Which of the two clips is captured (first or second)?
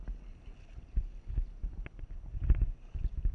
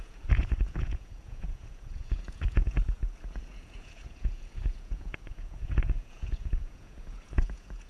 first